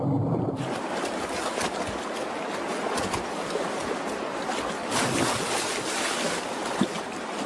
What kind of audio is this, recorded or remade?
recorded